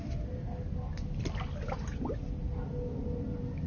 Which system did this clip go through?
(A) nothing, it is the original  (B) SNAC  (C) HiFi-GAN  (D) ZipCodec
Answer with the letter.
A